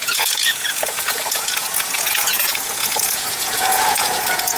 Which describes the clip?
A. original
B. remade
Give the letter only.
B